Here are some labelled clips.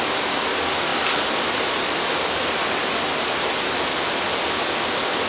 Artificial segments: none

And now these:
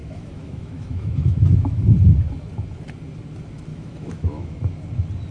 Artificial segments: 0.0-1.8 (autoencoder, DAC-VAE); 3.7-4.6

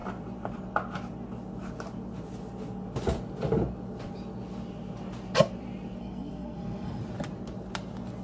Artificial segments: 6.0-7.0 (codec, SNAC)

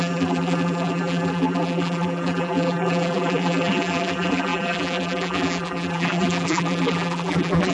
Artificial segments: 0.0-7.7 (vocoder, BigVGAN v2)

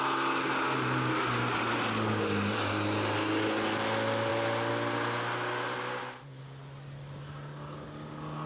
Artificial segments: none

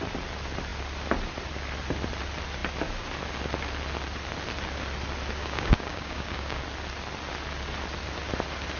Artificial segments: 5.4-6.6 (codec, DAC)

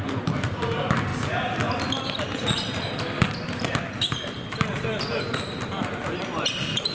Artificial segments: 0.0-1.1 (vocoder, BigVGAN v2); 5.2-6.9